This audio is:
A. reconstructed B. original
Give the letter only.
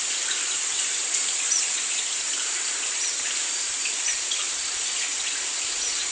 A